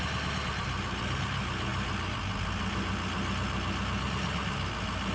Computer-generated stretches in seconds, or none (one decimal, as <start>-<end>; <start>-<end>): none